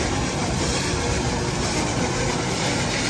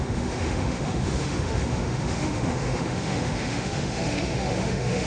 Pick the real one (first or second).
first